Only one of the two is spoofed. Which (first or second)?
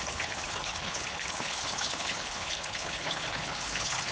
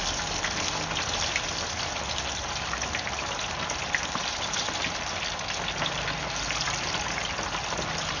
first